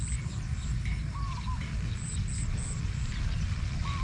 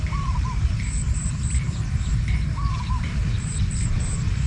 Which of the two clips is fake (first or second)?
second